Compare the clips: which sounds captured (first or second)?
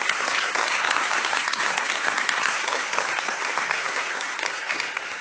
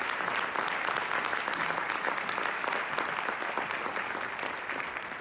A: second